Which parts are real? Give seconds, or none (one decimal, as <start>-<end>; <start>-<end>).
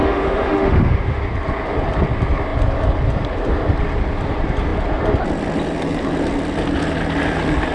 1.2-7.7